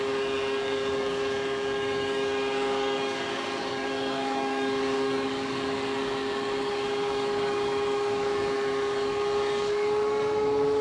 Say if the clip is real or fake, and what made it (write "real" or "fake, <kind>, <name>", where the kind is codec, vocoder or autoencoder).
fake, codec, DAC